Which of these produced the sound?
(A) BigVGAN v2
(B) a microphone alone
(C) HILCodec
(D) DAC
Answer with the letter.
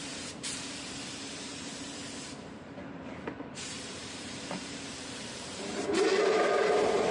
A